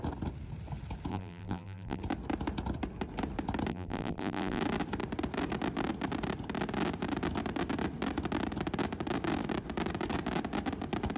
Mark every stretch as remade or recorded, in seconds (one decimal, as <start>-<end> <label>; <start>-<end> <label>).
0.0-1.1 recorded; 1.1-2.0 remade; 2.0-3.7 recorded; 3.7-4.6 remade; 4.6-11.2 recorded